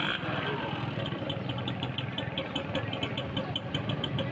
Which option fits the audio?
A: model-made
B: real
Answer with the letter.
B